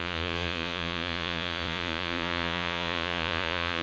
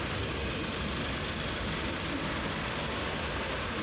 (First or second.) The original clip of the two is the second